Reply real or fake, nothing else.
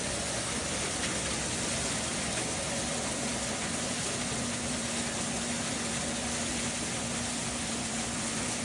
fake